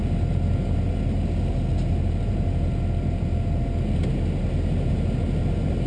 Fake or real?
real